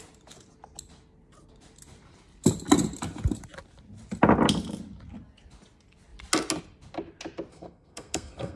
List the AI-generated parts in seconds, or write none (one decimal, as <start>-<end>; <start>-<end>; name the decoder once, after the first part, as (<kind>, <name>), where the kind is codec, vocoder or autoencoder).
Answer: 7.5-8.6 (codec, SNAC)